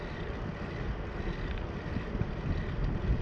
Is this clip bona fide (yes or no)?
yes